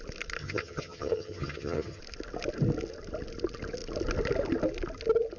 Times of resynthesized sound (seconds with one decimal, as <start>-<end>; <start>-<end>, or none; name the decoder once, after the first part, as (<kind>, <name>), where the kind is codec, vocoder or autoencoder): 0.4-2.0 (vocoder, HiFi-GAN)